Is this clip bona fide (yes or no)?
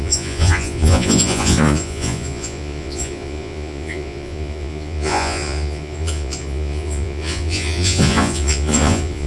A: no